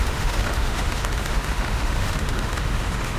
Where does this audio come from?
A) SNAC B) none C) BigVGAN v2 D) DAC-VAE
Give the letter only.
D